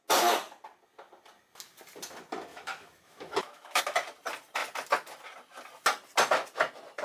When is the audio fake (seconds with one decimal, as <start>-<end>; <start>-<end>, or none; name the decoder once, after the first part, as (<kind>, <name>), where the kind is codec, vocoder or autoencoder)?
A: 2.5-3.8 (autoencoder, DAC-VAE)